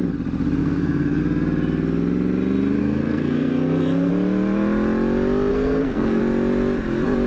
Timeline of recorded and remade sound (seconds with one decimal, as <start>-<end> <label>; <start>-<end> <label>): 0.0-0.6 recorded; 0.6-1.2 remade; 1.2-2.8 recorded; 2.8-4.1 remade; 4.1-5.5 recorded; 5.5-6.2 remade; 6.2-7.3 recorded